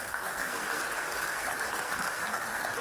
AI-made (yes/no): yes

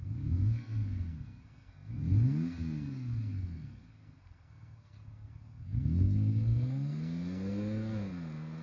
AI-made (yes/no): yes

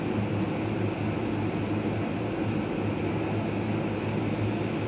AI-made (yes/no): no